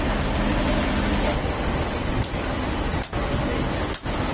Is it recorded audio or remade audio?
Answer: recorded